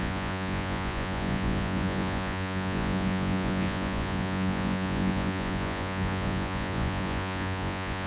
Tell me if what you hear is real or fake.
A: fake